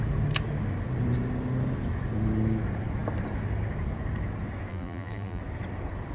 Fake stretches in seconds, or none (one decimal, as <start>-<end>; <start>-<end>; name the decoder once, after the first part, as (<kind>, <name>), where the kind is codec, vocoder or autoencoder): 4.7-5.4 (vocoder, BigVGAN v2)

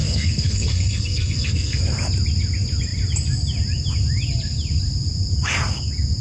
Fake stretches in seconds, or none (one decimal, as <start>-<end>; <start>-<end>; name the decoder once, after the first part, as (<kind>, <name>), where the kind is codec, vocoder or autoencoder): 0.0-1.8 (codec, SNAC)

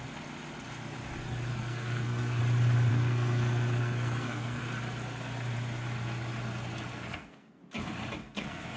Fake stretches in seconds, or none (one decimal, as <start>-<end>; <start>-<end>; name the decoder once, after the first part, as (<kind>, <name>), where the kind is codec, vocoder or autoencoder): 1.5-2.4 (codec, SNAC); 2.9-4.6; 6.9-7.6; 8.2-8.8

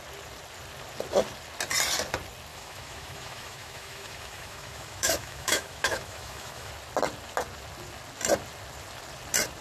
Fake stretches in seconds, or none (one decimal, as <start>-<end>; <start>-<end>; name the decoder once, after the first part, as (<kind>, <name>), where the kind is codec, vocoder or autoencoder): 2.5-6.7 (autoencoder, DAC-VAE)

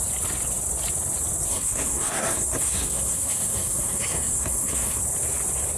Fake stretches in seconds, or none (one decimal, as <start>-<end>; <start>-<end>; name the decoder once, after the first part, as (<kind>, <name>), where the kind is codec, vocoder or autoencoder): 1.5-5.0 (codec, SNAC)

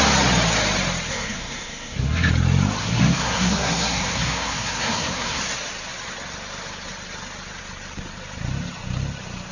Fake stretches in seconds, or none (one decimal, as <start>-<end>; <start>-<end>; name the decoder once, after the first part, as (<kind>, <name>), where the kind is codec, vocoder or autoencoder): 1.1-2.3 (codec, SNAC); 2.8-5.4

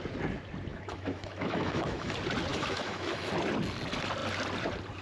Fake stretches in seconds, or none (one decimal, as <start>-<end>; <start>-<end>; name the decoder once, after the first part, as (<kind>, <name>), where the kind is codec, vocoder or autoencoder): 0.7-2.1 (autoencoder, DAC-VAE); 2.5-3.3